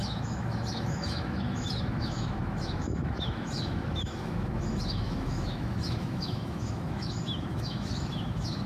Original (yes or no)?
no